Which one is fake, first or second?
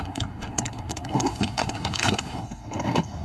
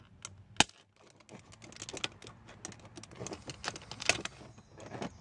first